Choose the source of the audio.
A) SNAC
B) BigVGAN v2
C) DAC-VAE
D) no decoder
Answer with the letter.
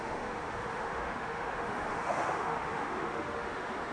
C